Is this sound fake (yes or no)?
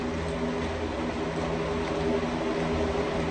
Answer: no